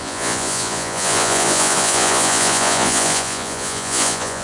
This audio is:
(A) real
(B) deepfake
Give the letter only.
B